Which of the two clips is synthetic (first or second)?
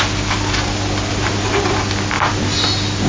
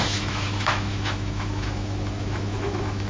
second